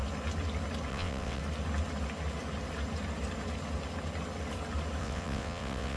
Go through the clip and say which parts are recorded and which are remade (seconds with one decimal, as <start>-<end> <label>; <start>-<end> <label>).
0.0-0.9 recorded; 0.9-1.4 remade; 1.4-5.0 recorded; 5.0-6.0 remade